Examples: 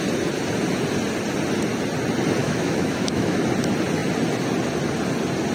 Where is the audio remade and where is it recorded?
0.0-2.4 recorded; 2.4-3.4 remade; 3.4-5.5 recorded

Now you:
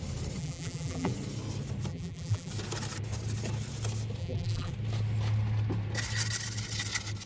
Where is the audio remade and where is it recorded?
0.0-0.4 recorded; 0.4-1.1 remade; 1.1-1.9 recorded; 1.9-2.5 remade; 2.5-4.2 recorded; 4.2-4.7 remade; 4.7-7.3 recorded

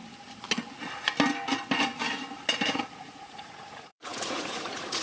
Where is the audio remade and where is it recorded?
0.0-3.0 recorded; 3.0-5.0 remade